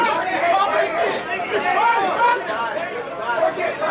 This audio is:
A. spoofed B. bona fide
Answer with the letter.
B